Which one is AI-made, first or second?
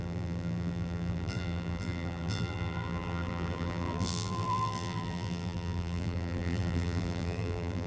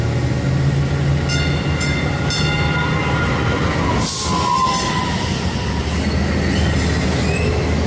first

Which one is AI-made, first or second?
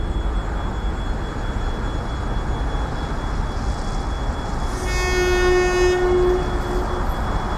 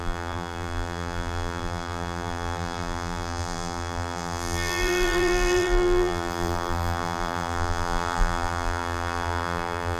second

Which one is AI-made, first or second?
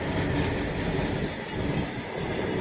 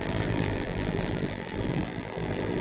second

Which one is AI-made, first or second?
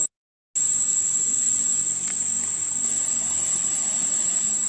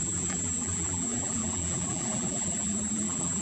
second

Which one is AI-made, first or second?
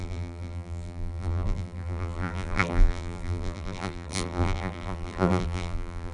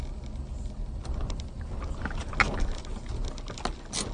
first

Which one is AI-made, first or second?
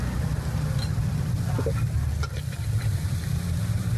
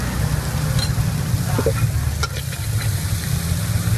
first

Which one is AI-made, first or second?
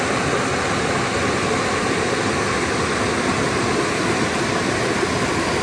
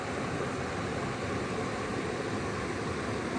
second